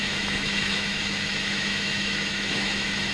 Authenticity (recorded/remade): remade